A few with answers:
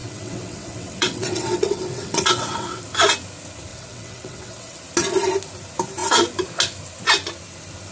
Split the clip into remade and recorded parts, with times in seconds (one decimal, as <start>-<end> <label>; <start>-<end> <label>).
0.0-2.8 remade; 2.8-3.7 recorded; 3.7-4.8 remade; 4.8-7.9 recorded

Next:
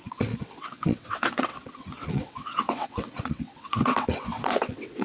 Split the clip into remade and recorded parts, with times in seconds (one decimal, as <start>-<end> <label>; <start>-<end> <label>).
0.0-5.0 remade

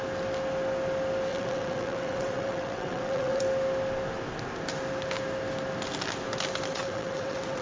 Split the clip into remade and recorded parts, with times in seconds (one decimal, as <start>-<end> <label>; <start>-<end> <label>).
0.0-1.3 recorded; 1.3-3.4 remade; 3.4-6.7 recorded; 6.7-7.6 remade

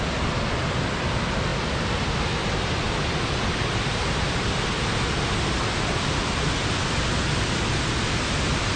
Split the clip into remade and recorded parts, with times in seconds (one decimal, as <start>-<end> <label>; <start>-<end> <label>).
0.0-8.8 recorded